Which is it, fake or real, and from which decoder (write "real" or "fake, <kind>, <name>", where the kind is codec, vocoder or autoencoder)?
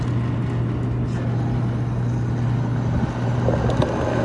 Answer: real